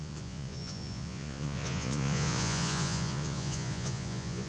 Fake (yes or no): yes